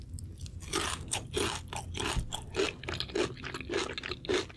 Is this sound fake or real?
real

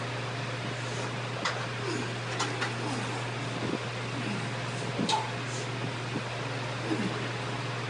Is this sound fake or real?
real